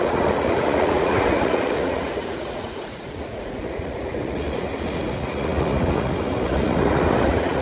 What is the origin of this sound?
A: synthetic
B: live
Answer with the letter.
A